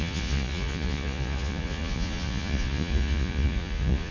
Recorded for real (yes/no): no